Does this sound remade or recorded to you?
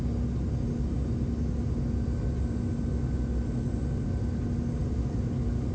recorded